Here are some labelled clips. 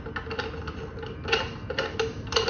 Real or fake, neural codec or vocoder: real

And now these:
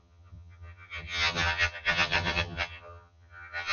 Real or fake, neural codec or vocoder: fake, vocoder, HiFi-GAN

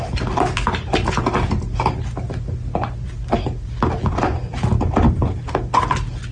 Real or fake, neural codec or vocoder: real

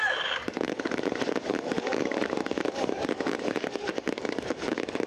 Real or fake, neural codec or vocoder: fake, codec, DAC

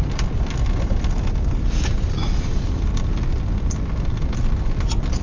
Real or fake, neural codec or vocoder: real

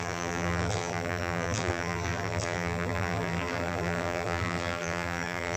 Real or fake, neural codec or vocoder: fake, vocoder, BigVGAN v2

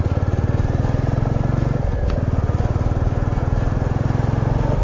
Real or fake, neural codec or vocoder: real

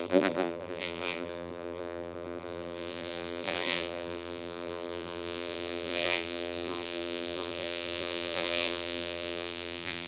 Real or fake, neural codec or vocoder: fake, vocoder, BigVGAN v2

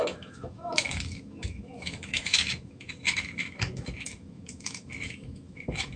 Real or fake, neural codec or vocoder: fake, autoencoder, DAC-VAE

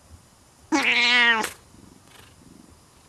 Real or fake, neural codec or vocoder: real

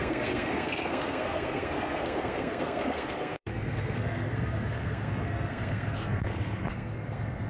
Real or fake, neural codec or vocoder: fake, codec, SNAC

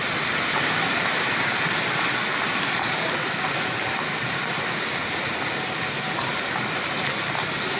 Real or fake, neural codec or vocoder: real